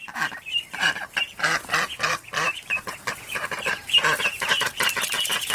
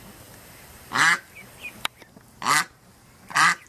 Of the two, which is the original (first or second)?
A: second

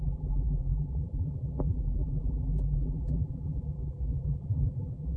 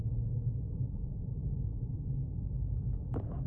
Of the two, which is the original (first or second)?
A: second